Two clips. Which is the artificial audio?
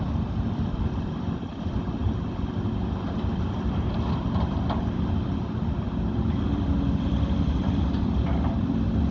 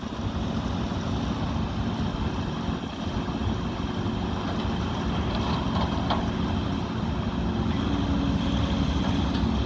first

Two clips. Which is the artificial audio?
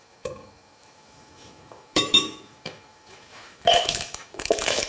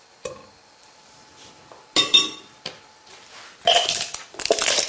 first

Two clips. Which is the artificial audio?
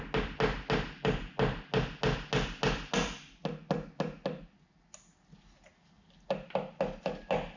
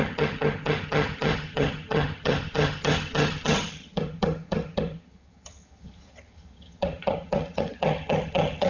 second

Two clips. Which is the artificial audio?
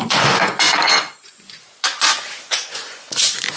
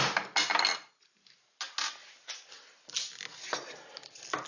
first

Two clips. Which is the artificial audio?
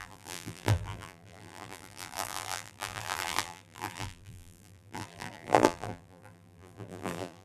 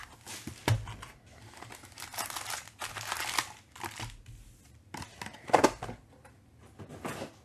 first